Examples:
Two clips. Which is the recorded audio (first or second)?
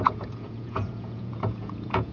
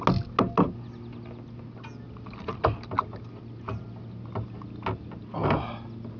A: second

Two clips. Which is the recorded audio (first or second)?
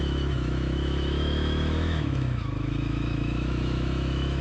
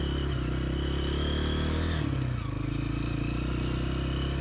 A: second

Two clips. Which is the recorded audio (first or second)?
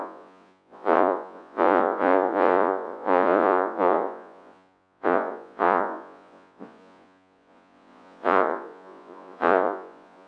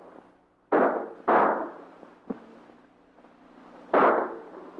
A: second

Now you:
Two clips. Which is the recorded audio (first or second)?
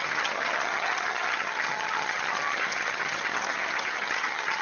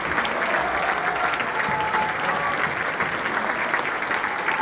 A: second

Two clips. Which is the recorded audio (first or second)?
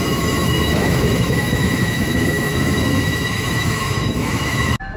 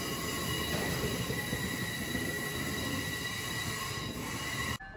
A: second